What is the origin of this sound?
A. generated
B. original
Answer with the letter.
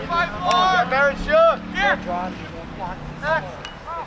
B